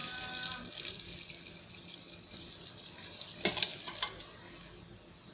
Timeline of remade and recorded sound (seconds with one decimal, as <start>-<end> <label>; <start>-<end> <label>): 0.0-5.3 recorded